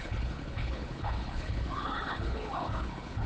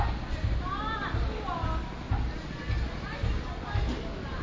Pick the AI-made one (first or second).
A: first